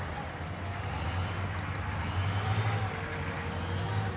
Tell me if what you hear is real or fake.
real